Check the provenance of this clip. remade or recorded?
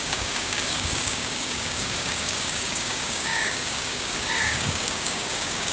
remade